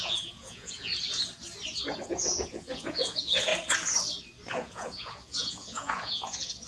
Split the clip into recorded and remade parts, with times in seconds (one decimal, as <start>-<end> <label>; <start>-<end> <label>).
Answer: 0.0-0.9 remade; 0.9-2.0 recorded; 2.0-3.5 remade; 3.5-4.5 recorded; 4.5-6.7 remade